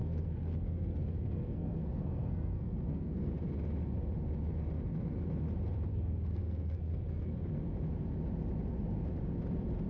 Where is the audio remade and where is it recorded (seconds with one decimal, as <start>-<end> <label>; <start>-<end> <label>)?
0.0-3.3 remade; 3.3-5.9 recorded; 5.9-7.2 remade; 7.2-9.9 recorded